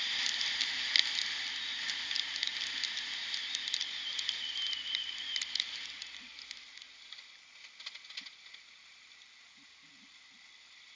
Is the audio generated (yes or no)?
no